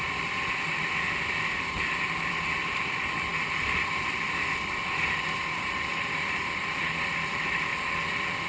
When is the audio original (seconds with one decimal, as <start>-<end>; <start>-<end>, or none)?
none